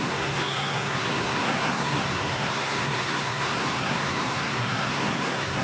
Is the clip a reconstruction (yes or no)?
yes